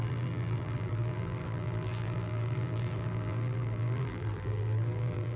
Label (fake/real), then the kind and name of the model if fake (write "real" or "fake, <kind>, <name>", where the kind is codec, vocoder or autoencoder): fake, vocoder, BigVGAN v2